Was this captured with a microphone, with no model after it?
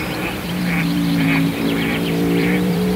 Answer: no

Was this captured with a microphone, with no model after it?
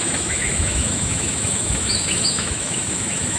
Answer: no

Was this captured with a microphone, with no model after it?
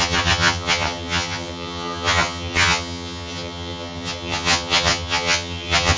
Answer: no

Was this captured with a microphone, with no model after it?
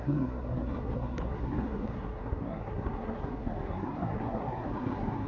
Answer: no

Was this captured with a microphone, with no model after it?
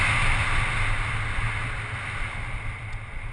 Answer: yes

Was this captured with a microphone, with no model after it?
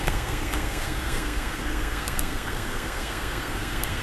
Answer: no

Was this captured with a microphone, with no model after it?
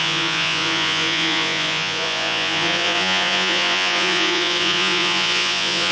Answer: no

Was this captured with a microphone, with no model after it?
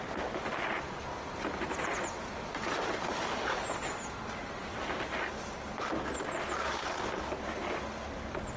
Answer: yes